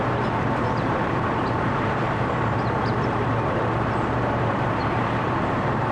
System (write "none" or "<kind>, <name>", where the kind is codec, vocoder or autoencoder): vocoder, BigVGAN v2